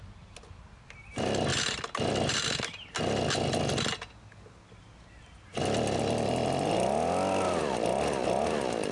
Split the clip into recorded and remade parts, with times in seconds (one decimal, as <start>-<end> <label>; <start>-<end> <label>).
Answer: 0.0-8.9 recorded